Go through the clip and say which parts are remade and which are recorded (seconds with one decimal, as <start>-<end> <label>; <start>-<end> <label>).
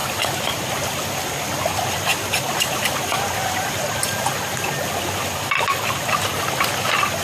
0.0-7.2 recorded